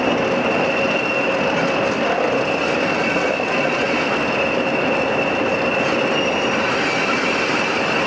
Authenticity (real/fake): real